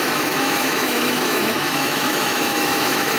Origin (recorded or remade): remade